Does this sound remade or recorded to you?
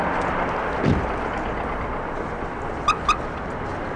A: recorded